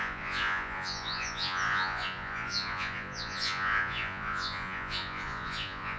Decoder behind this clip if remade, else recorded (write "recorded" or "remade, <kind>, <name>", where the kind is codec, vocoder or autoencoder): remade, vocoder, Vocos